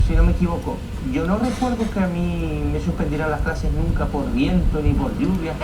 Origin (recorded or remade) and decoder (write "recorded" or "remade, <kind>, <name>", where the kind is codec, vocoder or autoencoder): recorded